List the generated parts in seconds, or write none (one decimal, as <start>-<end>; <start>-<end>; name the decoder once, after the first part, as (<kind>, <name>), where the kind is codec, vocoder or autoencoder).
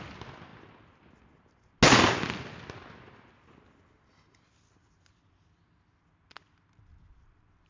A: none